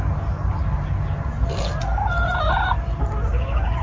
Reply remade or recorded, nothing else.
recorded